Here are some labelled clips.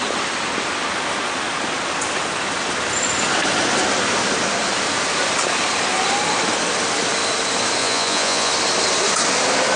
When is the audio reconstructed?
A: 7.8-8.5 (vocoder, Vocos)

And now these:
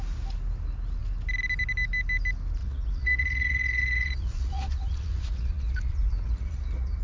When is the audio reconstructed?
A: 2.6-7.0 (vocoder, Vocos)

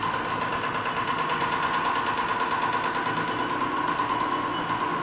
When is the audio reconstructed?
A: 1.3-1.9 (vocoder, Vocos)

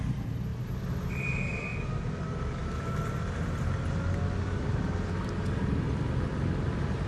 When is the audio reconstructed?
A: none

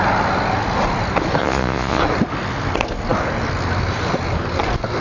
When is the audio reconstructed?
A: 1.4-2.0 (vocoder, Vocos)

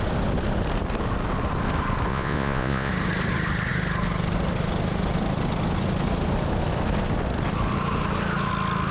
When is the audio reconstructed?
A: 2.1-2.9 (vocoder, Vocos)

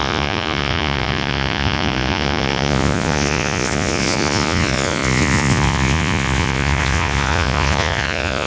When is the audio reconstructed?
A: 0.0-8.5 (vocoder, Vocos)